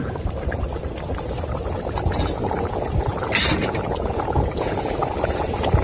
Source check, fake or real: fake